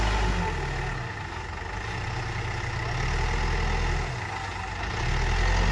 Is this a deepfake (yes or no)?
no